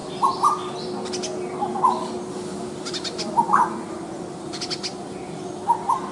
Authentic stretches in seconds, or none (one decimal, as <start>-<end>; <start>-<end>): 0.0-6.1

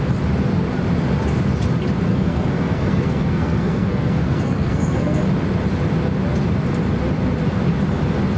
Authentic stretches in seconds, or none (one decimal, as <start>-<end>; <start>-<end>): 0.0-2.1; 5.2-8.4